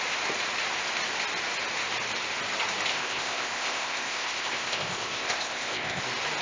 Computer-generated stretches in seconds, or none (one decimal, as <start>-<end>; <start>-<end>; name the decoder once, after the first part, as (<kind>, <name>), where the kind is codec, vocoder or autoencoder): 2.9-6.0 (codec, ZipCodec)